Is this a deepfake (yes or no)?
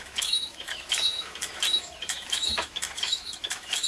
yes